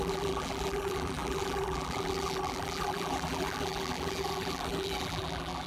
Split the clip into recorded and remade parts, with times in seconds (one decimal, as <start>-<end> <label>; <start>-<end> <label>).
0.0-5.7 remade